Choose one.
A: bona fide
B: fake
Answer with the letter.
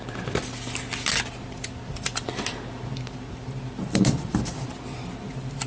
A